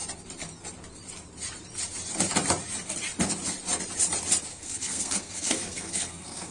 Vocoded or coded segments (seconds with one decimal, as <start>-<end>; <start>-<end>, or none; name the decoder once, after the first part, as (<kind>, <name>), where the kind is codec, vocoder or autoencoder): 4.5-6.5 (codec, SNAC)